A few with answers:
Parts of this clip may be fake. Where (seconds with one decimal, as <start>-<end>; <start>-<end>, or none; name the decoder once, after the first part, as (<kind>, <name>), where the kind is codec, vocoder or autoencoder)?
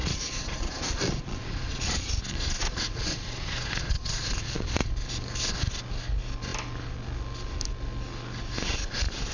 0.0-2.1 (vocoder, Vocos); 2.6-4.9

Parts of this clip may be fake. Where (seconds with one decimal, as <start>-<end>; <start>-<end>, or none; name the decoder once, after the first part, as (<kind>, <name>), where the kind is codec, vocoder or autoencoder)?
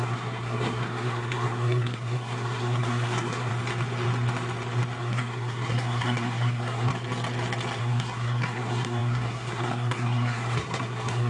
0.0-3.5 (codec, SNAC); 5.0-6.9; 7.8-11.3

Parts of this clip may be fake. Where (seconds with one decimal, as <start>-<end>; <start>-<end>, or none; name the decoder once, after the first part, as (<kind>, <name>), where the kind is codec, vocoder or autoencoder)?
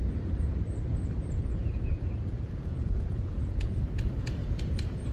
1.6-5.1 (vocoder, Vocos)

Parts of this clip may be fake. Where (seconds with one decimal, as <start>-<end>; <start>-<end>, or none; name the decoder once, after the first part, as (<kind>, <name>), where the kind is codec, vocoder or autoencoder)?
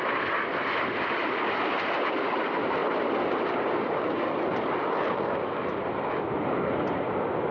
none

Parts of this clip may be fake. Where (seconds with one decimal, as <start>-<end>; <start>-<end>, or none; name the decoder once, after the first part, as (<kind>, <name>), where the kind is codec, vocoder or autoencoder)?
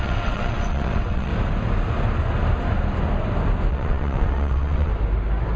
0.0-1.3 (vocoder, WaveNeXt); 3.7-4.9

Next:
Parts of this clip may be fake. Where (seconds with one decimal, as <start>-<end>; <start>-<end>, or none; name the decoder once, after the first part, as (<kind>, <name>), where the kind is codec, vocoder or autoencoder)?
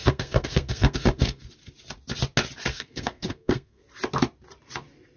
0.0-1.5 (codec, SNAC); 2.7-3.8